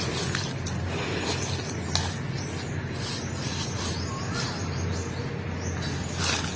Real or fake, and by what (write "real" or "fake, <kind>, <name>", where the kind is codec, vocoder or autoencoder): real